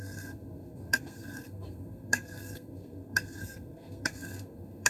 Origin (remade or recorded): remade